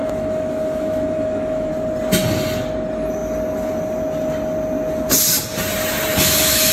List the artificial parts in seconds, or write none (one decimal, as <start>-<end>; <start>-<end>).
0.0-1.7; 6.1-6.7